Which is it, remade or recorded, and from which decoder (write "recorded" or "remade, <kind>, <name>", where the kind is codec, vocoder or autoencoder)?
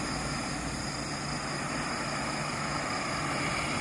recorded